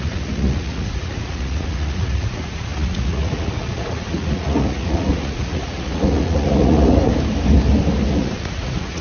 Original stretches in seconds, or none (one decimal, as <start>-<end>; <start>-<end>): 7.0-8.1